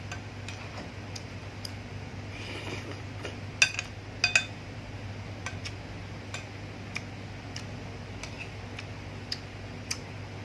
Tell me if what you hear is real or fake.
real